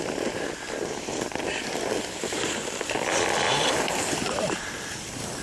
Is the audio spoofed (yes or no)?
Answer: yes